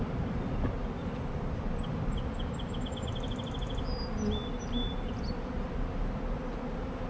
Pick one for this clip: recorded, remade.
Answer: recorded